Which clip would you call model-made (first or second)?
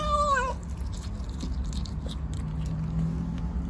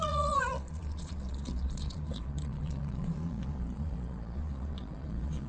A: second